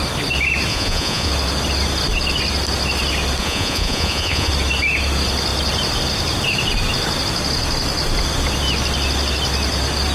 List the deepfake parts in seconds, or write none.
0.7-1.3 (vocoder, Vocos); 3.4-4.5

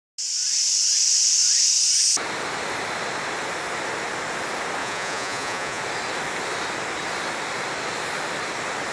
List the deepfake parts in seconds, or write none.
4.8-5.8 (vocoder, Vocos)

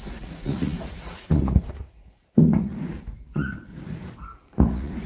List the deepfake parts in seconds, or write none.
0.0-5.1 (vocoder, Vocos)

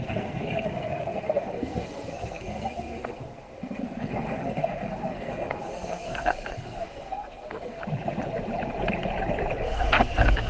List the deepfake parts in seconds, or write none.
0.0-7.8 (codec, SNAC); 9.6-10.5

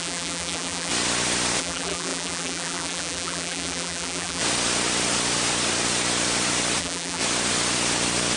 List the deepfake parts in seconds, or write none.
0.0-0.9 (vocoder, BigVGAN v2); 1.6-4.4; 6.8-7.2

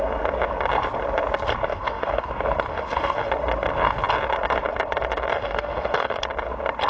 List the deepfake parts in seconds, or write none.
1.7-2.3 (autoencoder, DAC-VAE); 2.7-3.3; 5.3-6.2

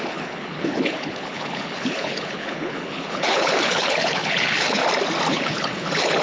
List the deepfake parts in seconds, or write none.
0.0-4.8 (codec, HILCodec); 5.3-6.2

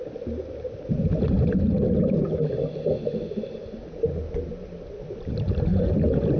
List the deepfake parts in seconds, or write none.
5.7-6.4 (vocoder, Vocos)